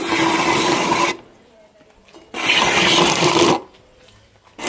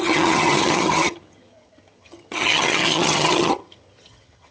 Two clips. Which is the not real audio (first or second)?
second